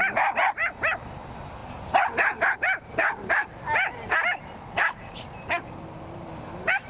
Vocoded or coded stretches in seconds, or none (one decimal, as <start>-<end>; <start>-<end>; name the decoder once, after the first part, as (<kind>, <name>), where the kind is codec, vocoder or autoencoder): none